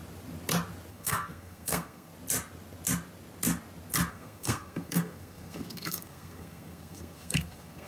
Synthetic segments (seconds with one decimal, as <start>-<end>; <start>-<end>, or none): 0.9-2.1; 4.1-7.9